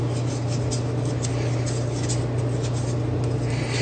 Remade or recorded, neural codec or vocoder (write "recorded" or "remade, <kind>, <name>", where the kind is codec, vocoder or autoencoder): recorded